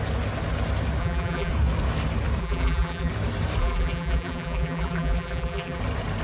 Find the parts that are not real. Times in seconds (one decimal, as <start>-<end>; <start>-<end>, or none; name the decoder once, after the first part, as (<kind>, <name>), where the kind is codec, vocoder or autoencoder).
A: 1.0-1.5 (vocoder, BigVGAN v2); 2.4-3.1; 3.6-5.8